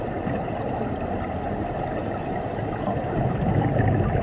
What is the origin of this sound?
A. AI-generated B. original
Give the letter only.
B